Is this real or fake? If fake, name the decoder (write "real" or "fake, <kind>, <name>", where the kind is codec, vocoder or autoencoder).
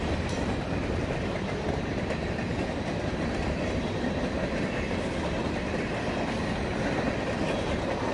real